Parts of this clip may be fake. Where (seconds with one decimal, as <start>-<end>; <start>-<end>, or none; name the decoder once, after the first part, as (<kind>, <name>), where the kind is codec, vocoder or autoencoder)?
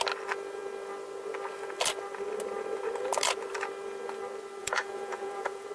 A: 4.6-5.7 (vocoder, Vocos)